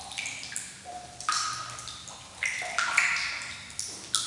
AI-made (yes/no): no